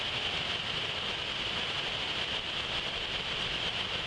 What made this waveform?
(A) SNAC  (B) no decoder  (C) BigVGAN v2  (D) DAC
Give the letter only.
B